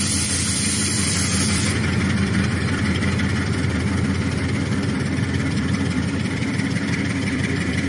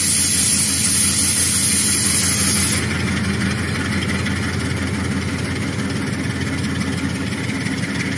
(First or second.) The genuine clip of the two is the second